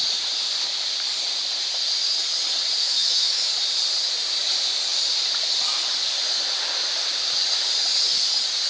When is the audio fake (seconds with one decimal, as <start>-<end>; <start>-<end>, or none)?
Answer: 2.8-3.5